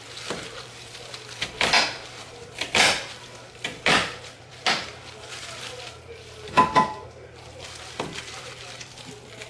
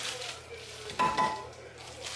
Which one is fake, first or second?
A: first